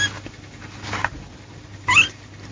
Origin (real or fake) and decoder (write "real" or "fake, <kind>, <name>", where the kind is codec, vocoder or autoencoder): real